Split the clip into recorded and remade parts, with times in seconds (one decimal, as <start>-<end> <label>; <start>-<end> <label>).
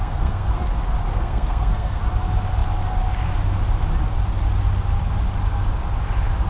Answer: 0.0-0.6 remade; 0.6-1.1 recorded; 1.1-2.0 remade; 2.0-6.5 recorded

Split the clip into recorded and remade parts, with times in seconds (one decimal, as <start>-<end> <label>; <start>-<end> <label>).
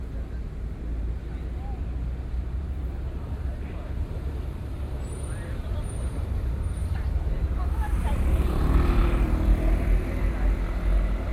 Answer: 0.0-1.2 remade; 1.2-2.4 recorded; 2.4-9.0 remade; 9.0-11.3 recorded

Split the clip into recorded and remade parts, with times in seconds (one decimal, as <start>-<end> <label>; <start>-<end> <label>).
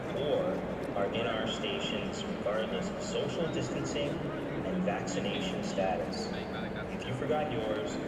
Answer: 0.0-8.1 recorded